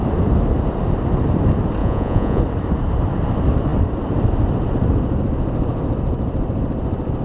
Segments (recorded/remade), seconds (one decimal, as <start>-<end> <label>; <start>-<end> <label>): 0.0-1.8 recorded; 1.8-2.4 remade; 2.4-7.2 recorded